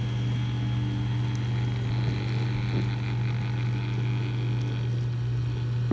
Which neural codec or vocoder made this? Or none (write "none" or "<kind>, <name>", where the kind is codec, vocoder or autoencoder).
none